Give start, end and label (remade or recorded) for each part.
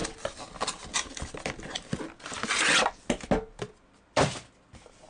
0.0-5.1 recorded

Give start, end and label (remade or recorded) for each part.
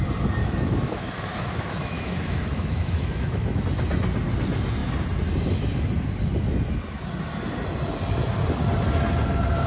0.0-0.4 recorded; 0.4-3.6 remade; 3.6-9.7 recorded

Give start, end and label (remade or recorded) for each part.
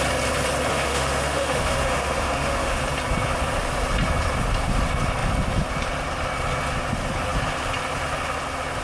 0.0-0.7 recorded; 0.7-2.8 remade; 2.8-8.8 recorded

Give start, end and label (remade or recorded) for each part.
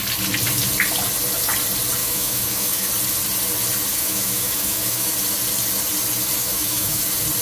0.0-2.0 recorded; 2.0-2.9 remade; 2.9-3.9 recorded; 3.9-5.1 remade; 5.1-6.4 recorded; 6.4-7.0 remade; 7.0-7.4 recorded